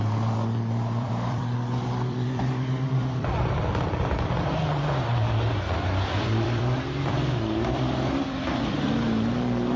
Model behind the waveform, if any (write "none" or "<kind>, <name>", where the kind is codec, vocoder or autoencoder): vocoder, BigVGAN v2